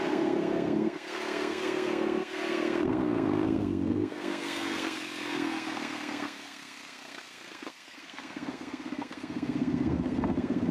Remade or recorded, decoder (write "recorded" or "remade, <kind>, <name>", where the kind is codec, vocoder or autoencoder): remade, codec, SNAC